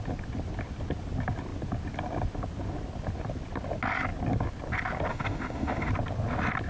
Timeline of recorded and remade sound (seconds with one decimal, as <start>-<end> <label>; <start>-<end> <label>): 0.0-5.1 recorded; 5.1-5.9 remade; 5.9-6.7 recorded